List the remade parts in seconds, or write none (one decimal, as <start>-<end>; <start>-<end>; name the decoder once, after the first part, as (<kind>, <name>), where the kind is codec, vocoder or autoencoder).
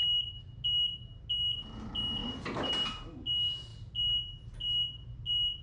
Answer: none